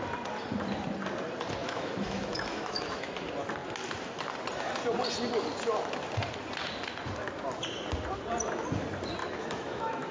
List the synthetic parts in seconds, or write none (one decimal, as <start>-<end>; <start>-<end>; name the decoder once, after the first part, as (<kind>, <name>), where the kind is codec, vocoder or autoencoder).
1.6-3.1 (autoencoder, DAC-VAE); 9.2-10.1